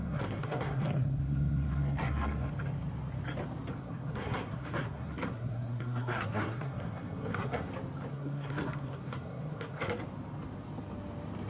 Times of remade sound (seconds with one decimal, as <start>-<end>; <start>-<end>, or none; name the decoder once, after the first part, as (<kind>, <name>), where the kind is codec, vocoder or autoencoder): 0.0-2.5 (codec, SNAC); 3.8-7.7; 8.1-10.0